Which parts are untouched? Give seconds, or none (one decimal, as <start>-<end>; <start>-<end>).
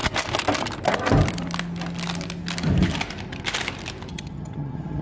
0.0-4.1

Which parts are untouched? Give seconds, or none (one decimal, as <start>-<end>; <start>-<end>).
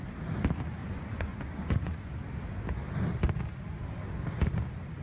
0.0-0.8; 2.1-5.0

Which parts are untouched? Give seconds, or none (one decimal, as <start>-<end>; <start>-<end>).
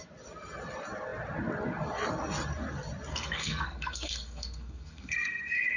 0.0-3.1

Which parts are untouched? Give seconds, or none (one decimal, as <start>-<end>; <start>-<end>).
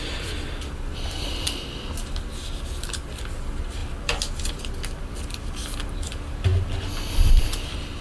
0.0-8.0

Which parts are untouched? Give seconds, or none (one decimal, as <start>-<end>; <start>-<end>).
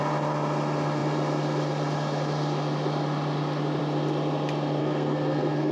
0.0-4.8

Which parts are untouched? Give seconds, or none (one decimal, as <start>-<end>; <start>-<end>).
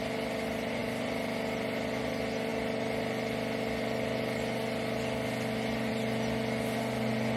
0.0-7.4